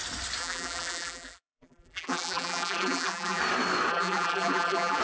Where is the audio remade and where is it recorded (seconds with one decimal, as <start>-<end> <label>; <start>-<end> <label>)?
0.0-0.4 recorded; 0.4-3.4 remade; 3.4-3.9 recorded; 3.9-5.0 remade

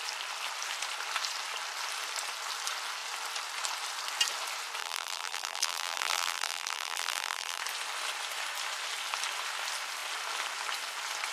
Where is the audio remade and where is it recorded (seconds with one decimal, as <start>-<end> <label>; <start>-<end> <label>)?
0.0-4.8 recorded; 4.8-7.6 remade; 7.6-11.3 recorded

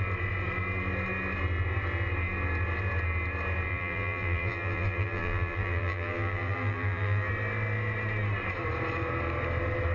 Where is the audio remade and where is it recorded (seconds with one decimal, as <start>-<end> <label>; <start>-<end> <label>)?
0.0-3.7 recorded; 3.7-7.3 remade; 7.3-9.9 recorded

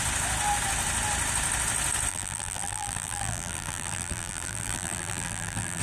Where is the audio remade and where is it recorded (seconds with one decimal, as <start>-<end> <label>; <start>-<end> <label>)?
0.0-2.1 recorded; 2.1-5.8 remade

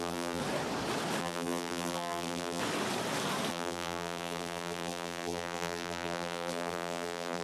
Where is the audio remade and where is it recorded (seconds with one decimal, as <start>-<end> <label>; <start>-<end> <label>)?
0.0-0.4 remade; 0.4-1.2 recorded; 1.2-2.6 remade; 2.6-3.5 recorded; 3.5-7.4 remade

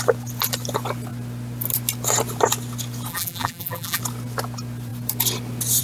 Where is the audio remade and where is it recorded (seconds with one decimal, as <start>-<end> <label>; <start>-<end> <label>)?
0.0-3.1 recorded; 3.1-4.0 remade; 4.0-5.8 recorded

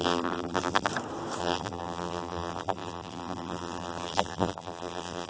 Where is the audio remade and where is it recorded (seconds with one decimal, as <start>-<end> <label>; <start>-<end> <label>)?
0.0-0.9 remade; 0.9-1.4 recorded; 1.4-5.3 remade